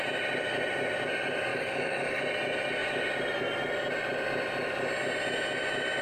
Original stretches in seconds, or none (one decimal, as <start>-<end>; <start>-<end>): 0.0-1.5; 2.2-6.0